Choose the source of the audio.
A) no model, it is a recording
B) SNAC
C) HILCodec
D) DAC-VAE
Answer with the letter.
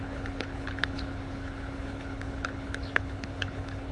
C